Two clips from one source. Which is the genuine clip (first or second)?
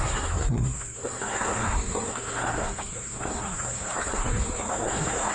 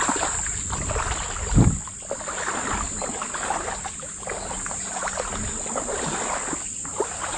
second